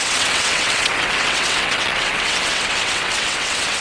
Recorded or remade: remade